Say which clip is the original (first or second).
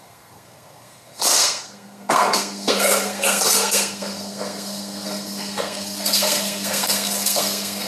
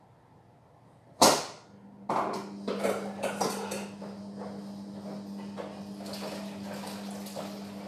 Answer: second